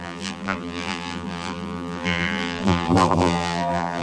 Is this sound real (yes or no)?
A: no